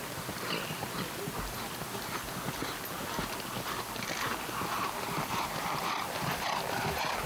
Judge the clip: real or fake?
fake